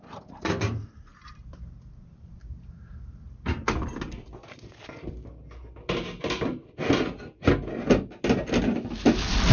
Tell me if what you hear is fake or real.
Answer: real